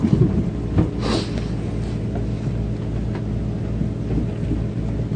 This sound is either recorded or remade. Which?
recorded